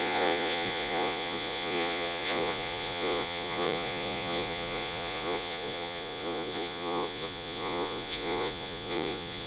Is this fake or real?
fake